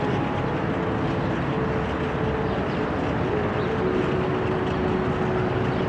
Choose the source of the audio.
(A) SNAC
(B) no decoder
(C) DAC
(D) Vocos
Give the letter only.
B